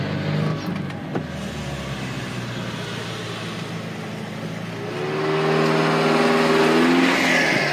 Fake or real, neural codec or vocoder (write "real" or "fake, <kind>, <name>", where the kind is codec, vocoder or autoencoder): real